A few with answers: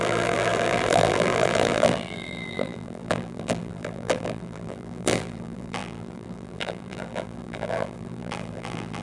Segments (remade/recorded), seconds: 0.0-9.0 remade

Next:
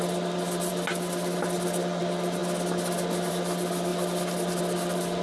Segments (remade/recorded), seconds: 0.0-5.2 recorded

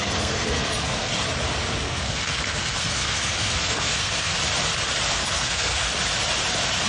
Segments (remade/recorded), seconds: 0.0-1.1 remade; 1.1-1.8 recorded; 1.8-4.3 remade; 4.3-5.1 recorded; 5.1-5.9 remade; 5.9-6.9 recorded

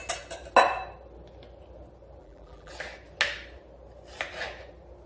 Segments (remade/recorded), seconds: 0.0-2.2 recorded; 2.2-2.7 remade; 2.7-5.1 recorded

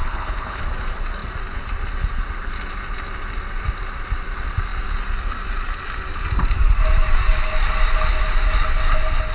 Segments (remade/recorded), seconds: 0.0-0.6 remade; 0.6-9.3 recorded